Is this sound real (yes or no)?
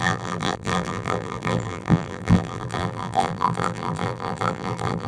no